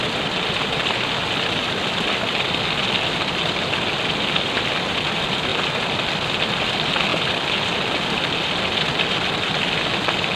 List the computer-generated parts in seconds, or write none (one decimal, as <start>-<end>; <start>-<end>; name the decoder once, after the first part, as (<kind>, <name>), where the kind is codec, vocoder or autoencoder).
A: none